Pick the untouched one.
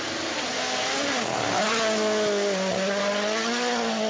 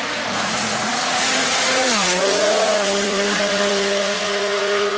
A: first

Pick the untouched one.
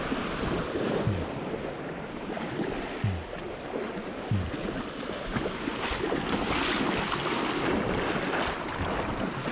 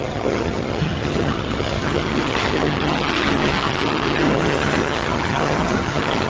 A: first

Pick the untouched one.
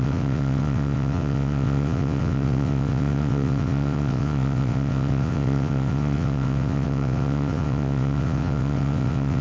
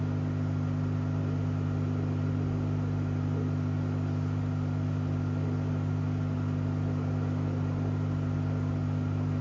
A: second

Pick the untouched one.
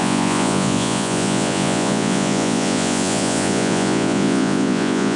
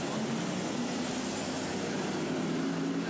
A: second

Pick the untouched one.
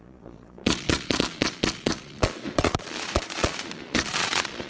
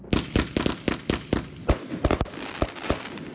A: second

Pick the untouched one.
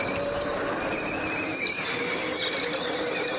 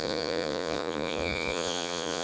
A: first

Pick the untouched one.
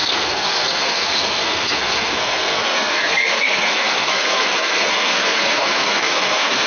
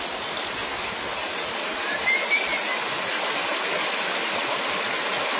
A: second